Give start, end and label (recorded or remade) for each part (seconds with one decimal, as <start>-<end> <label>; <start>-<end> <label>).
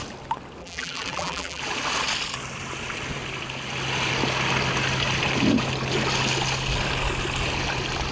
0.0-0.6 recorded; 0.6-1.6 remade; 1.6-8.1 recorded